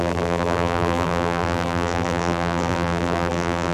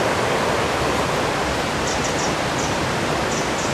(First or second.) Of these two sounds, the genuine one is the second